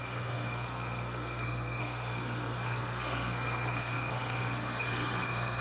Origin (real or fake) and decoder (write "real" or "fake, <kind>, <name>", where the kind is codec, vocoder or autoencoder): fake, codec, SNAC